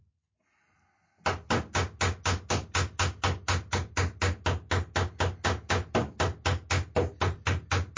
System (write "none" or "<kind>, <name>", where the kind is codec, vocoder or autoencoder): none